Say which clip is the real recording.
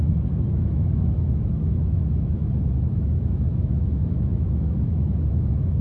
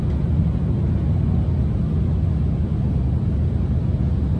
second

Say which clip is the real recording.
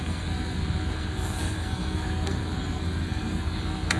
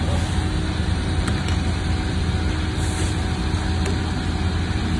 second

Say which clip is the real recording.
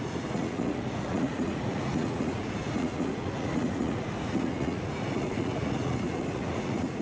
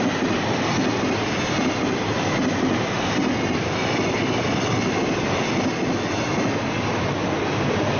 second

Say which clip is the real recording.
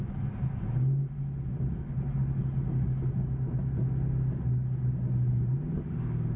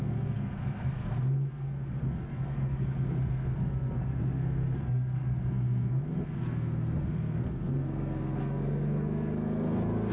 first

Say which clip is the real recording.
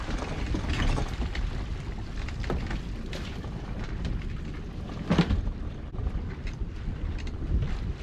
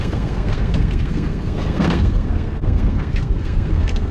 first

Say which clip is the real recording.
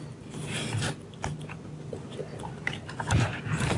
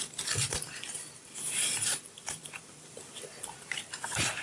first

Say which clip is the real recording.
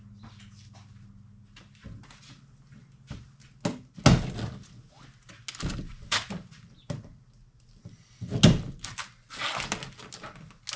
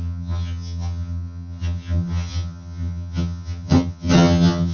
first